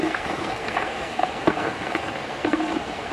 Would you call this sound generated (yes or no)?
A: yes